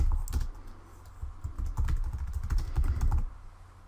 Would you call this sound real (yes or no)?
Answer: yes